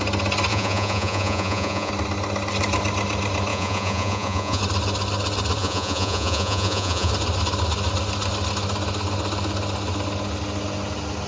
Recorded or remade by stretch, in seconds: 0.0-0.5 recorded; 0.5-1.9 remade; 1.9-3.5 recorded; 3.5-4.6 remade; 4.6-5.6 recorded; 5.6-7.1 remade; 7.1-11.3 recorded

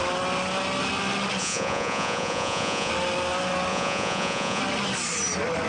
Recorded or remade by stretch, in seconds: 0.0-1.4 recorded; 1.4-2.9 remade; 2.9-3.7 recorded; 3.7-4.6 remade; 4.6-5.7 recorded

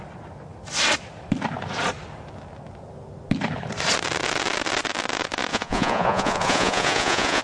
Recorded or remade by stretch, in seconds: 0.0-5.5 recorded; 5.5-7.4 remade

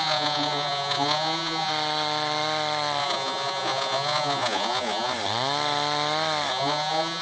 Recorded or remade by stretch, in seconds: 0.0-1.7 remade; 1.7-3.0 recorded; 3.0-5.1 remade; 5.1-6.5 recorded; 6.5-7.2 remade

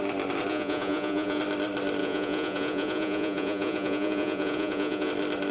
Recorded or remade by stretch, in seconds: 0.0-0.5 recorded; 0.5-1.4 remade; 1.4-2.0 recorded; 2.0-5.1 remade; 5.1-5.5 recorded

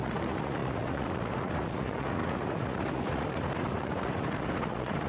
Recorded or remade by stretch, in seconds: 0.0-5.1 remade

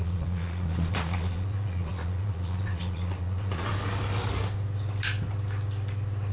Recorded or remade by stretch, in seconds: 0.0-3.7 remade; 3.7-6.3 recorded

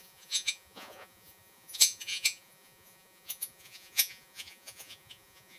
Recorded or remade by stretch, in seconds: 0.0-5.6 remade